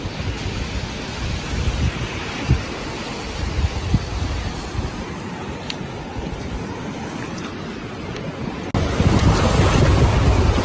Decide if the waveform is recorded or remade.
recorded